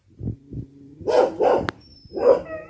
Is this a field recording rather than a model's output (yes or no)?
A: yes